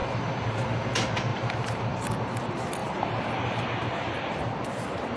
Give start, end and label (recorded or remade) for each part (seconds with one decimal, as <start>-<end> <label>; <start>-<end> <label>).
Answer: 0.0-0.5 remade; 0.5-1.3 recorded; 1.3-2.2 remade; 2.2-2.8 recorded; 2.8-4.2 remade; 4.2-5.2 recorded